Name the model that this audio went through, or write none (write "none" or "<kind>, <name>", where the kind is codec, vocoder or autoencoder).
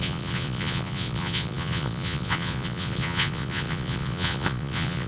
vocoder, Vocos